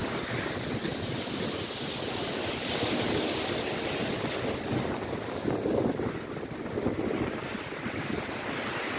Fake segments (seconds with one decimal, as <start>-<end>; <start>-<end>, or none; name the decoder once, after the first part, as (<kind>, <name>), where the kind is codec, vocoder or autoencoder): none